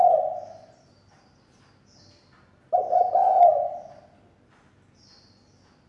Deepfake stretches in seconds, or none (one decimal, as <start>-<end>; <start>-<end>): none